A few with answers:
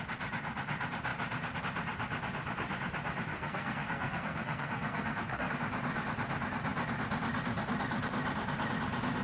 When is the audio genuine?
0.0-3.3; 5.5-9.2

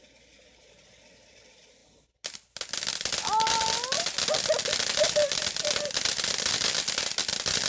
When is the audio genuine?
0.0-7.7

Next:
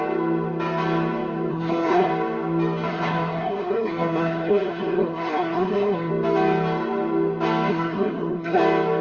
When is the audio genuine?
0.0-1.5; 2.1-2.9; 6.1-7.7; 8.6-9.0